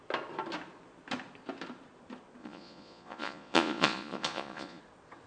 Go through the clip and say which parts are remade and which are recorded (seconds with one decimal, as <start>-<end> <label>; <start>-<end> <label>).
0.0-2.4 recorded; 2.4-4.8 remade; 4.8-5.3 recorded

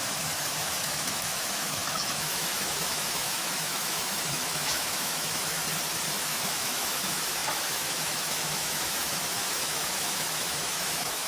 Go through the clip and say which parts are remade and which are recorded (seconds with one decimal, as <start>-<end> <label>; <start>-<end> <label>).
0.0-5.6 remade; 5.6-6.2 recorded; 6.2-11.3 remade

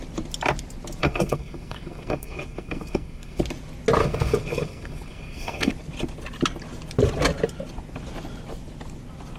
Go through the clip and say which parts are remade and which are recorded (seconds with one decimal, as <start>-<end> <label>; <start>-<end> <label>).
0.0-1.0 recorded; 1.0-3.4 remade; 3.4-4.0 recorded; 4.0-5.7 remade; 5.7-9.4 recorded

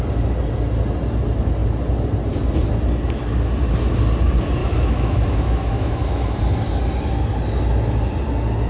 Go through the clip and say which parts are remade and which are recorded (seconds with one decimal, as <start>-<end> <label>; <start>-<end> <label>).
0.0-4.6 recorded; 4.6-6.4 remade; 6.4-8.7 recorded

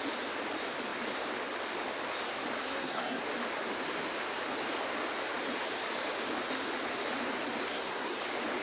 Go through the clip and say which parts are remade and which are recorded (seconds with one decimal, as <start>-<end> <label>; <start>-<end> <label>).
0.0-2.6 recorded; 2.6-3.2 remade; 3.2-7.7 recorded; 7.7-8.2 remade; 8.2-8.6 recorded

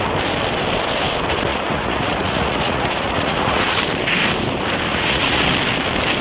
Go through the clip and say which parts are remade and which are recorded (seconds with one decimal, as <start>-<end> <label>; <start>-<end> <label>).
0.0-1.5 recorded; 1.5-3.8 remade; 3.8-4.9 recorded; 4.9-5.4 remade; 5.4-6.2 recorded